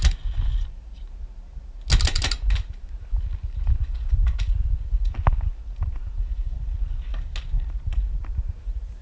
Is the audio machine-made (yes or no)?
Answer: no